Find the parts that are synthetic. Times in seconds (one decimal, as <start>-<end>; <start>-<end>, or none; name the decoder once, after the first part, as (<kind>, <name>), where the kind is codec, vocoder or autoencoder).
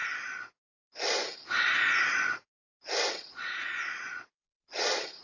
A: 3.1-5.2 (vocoder, Vocos)